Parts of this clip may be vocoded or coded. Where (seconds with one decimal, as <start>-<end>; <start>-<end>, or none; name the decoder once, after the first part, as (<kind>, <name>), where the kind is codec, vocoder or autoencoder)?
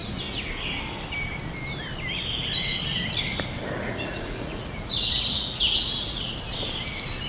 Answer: 3.8-6.3 (vocoder, Vocos)